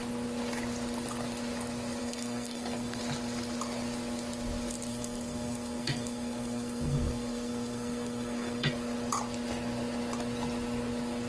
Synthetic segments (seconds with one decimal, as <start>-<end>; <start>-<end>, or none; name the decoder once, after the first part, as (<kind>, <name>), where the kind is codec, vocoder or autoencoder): 2.0-3.0 (codec, SNAC); 4.9-8.7